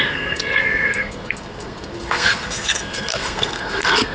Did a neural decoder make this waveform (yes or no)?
yes